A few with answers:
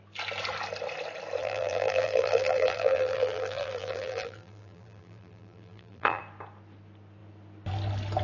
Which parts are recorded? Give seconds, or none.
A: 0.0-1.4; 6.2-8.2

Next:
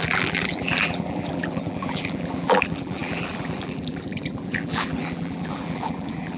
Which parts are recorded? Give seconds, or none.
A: none